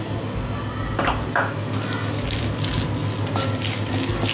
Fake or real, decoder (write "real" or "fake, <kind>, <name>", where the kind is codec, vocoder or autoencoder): real